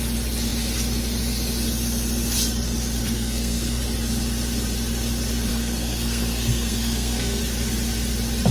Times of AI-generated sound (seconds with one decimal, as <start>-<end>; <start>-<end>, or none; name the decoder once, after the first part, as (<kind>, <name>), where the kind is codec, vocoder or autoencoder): 3.0-3.8 (codec, SNAC); 5.5-7.4